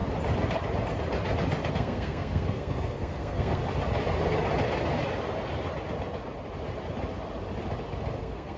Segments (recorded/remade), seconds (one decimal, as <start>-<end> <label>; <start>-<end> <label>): 0.0-1.7 recorded; 1.7-3.6 remade; 3.6-8.2 recorded; 8.2-8.6 remade